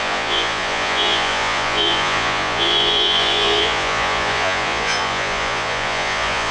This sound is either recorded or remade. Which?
remade